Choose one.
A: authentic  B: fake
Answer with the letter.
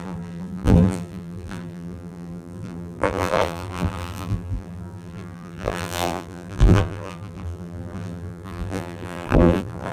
B